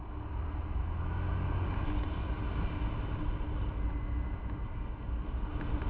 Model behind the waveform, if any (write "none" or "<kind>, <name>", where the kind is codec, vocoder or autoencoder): none